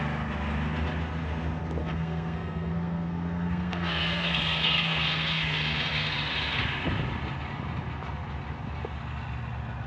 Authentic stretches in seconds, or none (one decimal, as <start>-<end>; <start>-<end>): 0.0-1.8; 6.1-9.9